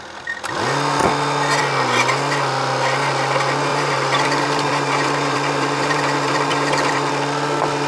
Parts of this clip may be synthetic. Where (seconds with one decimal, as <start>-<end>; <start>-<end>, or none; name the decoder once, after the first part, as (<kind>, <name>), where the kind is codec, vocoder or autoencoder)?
3.7-7.1 (vocoder, BigVGAN v2)